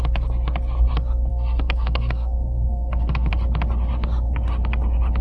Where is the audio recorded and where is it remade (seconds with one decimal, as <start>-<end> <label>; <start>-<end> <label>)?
0.0-1.3 recorded; 1.3-3.3 remade; 3.3-5.2 recorded